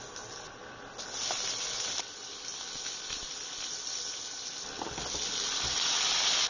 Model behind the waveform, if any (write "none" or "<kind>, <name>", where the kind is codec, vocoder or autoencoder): none